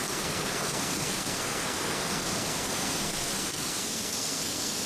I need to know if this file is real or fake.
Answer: fake